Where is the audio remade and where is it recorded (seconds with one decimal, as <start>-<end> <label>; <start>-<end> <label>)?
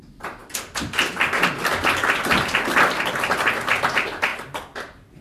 0.0-5.2 recorded